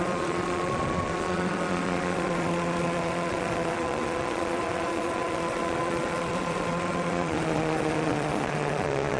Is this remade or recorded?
remade